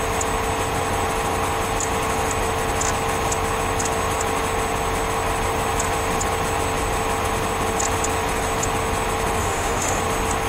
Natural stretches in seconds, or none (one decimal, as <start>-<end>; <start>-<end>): 0.0-9.4; 10.0-10.5